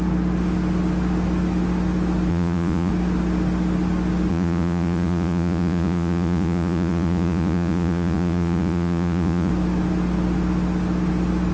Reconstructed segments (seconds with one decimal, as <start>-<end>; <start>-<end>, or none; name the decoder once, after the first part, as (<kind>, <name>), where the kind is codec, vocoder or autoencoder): 2.3-2.9 (vocoder, Vocos); 4.3-9.5